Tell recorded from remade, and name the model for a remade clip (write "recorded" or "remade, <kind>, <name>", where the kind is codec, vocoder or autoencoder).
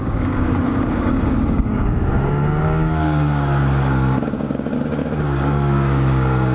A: remade, codec, DAC